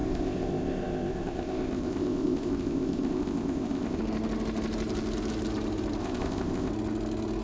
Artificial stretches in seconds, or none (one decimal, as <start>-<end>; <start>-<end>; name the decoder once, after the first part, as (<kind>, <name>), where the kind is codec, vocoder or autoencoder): 0.0-4.0 (codec, ZipCodec); 6.0-6.7